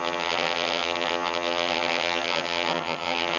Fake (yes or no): yes